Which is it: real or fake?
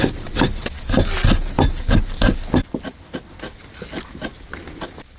real